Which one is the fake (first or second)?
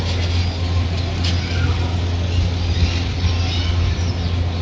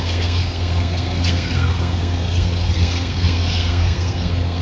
second